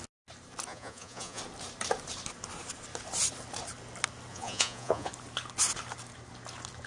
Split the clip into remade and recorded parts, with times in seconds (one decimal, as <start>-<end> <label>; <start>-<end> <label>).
0.0-0.7 recorded; 0.7-1.4 remade; 1.4-4.3 recorded; 4.3-5.1 remade; 5.1-6.9 recorded